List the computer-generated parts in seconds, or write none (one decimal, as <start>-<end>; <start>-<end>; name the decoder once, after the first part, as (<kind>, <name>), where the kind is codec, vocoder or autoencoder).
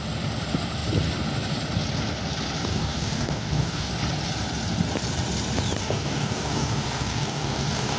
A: 2.7-3.9 (codec, DAC); 5.8-8.0